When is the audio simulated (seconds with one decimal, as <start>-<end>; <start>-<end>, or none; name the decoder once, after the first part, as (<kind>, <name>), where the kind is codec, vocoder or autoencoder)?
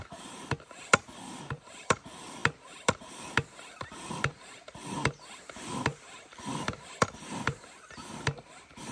0.0-8.9 (vocoder, BigVGAN v2)